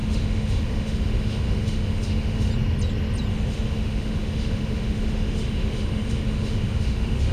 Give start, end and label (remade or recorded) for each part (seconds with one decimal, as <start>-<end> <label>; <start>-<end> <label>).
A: 0.0-2.5 remade; 2.5-3.3 recorded; 3.3-7.3 remade

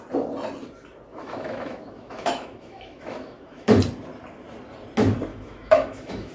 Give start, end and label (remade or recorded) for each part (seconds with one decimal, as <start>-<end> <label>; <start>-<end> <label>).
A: 0.0-1.1 recorded; 1.1-3.8 remade; 3.8-5.3 recorded; 5.3-6.3 remade

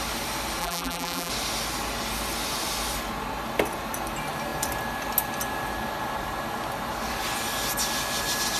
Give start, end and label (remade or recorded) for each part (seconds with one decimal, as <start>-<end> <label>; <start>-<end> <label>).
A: 0.0-0.6 recorded; 0.6-1.3 remade; 1.3-8.6 recorded